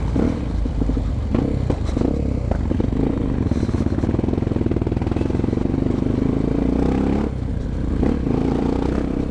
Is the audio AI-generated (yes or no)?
no